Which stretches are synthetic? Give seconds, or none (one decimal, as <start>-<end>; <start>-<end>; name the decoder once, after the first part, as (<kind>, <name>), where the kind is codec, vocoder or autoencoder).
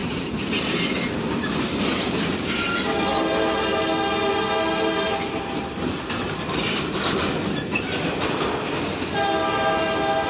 none